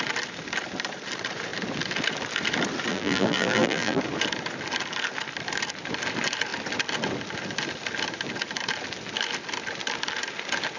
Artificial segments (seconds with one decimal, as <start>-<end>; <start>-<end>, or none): 2.9-4.0